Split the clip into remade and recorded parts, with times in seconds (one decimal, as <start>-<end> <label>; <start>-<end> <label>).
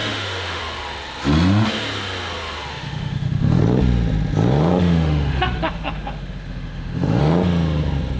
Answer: 0.0-0.6 remade; 0.6-2.7 recorded; 2.7-3.6 remade; 3.6-4.7 recorded; 4.7-7.2 remade; 7.2-8.2 recorded